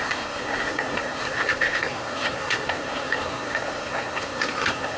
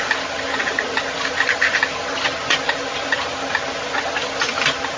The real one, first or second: second